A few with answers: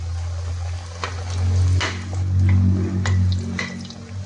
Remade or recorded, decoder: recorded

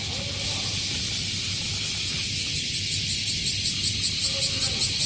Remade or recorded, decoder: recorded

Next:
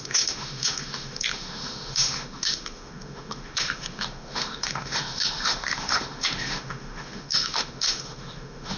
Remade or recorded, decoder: remade, autoencoder, DAC-VAE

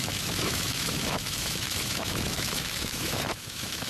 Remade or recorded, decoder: remade, autoencoder, DAC-VAE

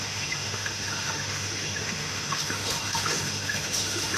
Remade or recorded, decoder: remade, autoencoder, DAC-VAE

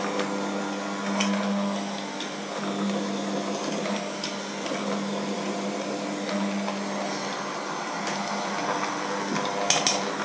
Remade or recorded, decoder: recorded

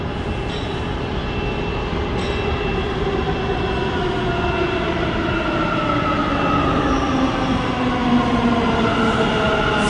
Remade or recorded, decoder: recorded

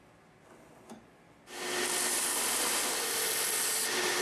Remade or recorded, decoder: recorded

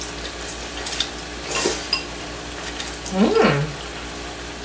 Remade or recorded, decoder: recorded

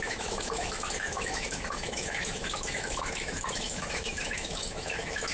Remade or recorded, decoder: remade, autoencoder, DAC-VAE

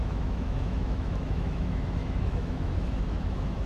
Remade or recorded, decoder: remade, autoencoder, DAC-VAE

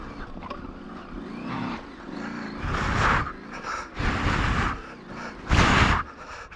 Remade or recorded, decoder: recorded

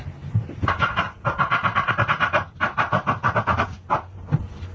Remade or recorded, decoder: recorded